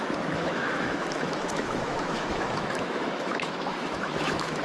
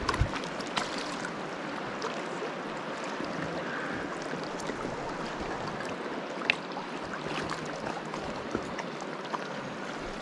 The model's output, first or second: first